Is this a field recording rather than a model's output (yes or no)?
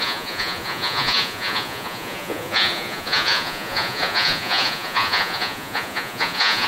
no